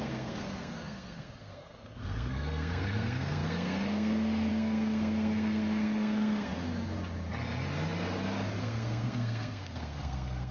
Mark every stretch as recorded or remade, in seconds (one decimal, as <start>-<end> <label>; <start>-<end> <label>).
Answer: 0.0-6.5 remade; 6.5-8.6 recorded; 8.6-10.5 remade